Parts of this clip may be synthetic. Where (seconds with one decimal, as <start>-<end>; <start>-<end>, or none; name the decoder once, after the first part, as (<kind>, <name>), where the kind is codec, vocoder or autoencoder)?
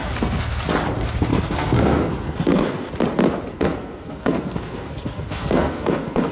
0.0-0.6 (codec, SNAC); 1.3-2.9; 3.5-6.3